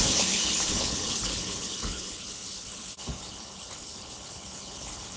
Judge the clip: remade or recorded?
remade